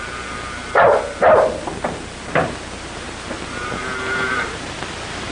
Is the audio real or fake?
real